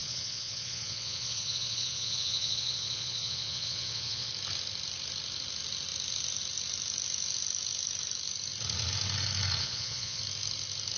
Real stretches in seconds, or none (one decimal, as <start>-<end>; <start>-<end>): 4.3-9.6; 10.2-11.0